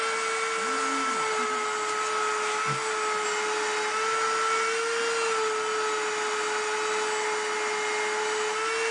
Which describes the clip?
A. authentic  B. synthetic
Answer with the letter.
A